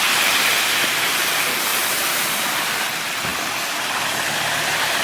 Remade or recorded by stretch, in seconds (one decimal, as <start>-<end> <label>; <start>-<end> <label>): 0.0-1.7 recorded; 1.7-2.5 remade; 2.5-5.0 recorded